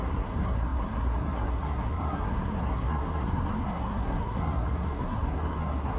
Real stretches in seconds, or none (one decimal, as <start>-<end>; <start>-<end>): none